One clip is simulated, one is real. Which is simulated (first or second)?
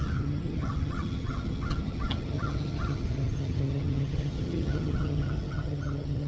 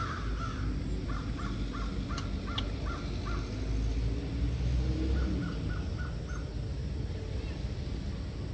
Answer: first